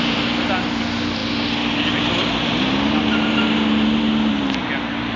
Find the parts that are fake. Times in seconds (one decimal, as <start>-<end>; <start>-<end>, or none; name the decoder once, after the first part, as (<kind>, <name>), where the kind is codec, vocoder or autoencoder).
none